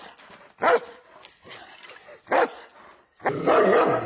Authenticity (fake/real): real